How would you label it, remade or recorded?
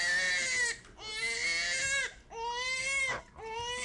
recorded